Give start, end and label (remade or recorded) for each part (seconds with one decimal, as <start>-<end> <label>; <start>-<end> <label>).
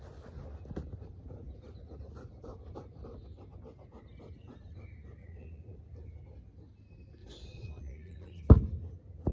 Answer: 0.0-5.2 recorded; 5.2-5.8 remade; 5.8-7.2 recorded; 7.2-8.4 remade; 8.4-9.3 recorded